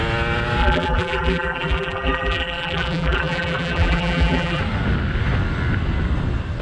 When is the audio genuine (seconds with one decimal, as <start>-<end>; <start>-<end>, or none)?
0.0-0.6; 4.6-6.6